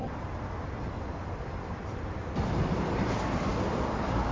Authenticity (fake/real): fake